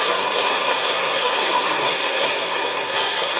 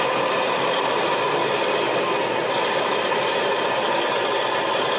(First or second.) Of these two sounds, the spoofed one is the first